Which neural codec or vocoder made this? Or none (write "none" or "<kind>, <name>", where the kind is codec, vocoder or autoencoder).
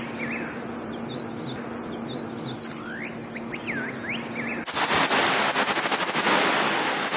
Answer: none